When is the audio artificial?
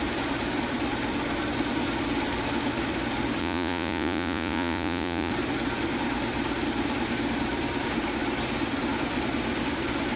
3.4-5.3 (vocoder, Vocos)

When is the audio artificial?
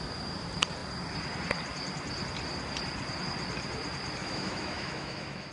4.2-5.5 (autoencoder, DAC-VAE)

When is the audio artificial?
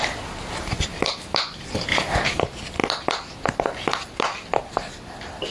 1.9-2.4 (vocoder, BigVGAN v2)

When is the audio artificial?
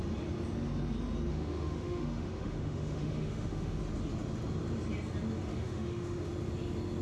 1.3-3.8 (autoencoder, DAC-VAE); 5.5-6.3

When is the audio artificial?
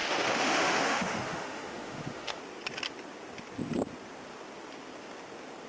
0.0-2.4 (autoencoder, DAC-VAE)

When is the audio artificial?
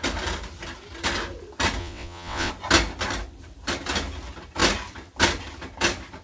1.8-2.5 (vocoder, WaveNeXt)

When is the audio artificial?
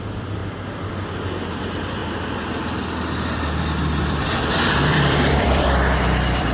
0.0-0.4 (vocoder, BigVGAN v2); 1.5-2.0; 4.0-6.5